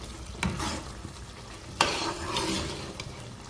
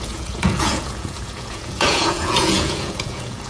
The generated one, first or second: second